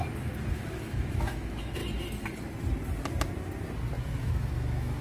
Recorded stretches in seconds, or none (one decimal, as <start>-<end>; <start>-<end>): 0.0-0.5; 1.8-4.2